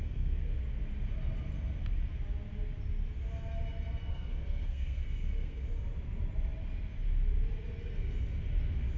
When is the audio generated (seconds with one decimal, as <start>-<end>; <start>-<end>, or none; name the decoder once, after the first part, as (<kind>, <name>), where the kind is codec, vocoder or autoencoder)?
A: 0.0-0.5 (codec, SNAC); 4.1-5.6